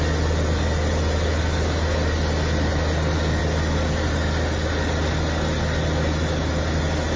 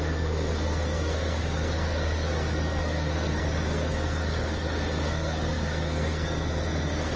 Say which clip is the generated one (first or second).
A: second